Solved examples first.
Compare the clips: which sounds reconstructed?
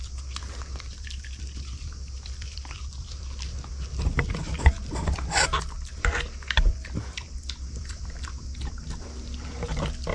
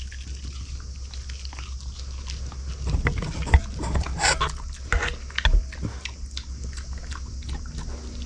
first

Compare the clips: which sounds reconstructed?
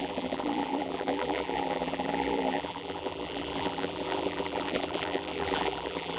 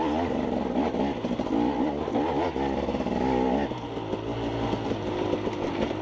first